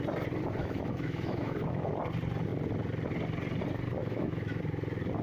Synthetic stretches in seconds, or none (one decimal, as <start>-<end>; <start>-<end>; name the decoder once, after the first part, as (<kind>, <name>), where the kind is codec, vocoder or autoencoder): 0.6-1.9 (autoencoder, DAC-VAE); 4.0-4.6